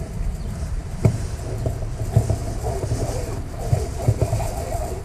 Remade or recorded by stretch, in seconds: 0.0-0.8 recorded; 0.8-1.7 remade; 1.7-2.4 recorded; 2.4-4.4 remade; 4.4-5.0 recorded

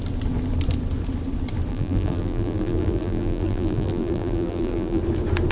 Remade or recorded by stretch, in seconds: 0.0-1.7 recorded; 1.7-5.0 remade; 5.0-5.5 recorded

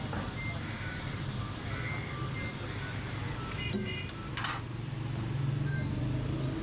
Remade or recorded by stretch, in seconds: 0.0-6.6 recorded

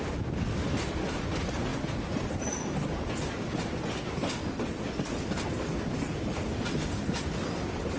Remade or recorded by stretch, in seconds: 0.0-8.0 recorded